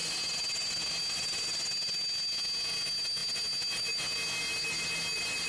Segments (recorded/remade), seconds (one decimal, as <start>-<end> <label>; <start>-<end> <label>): 0.0-5.5 recorded